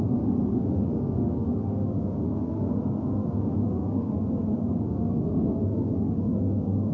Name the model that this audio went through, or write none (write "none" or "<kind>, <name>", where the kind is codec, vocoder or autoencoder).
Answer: autoencoder, DAC-VAE